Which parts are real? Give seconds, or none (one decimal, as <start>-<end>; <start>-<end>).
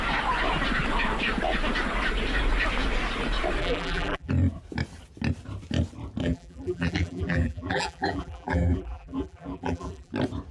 0.0-3.6; 4.3-6.2; 10.1-10.5